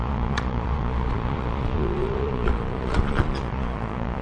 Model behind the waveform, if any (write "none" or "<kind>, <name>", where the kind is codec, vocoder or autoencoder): vocoder, Vocos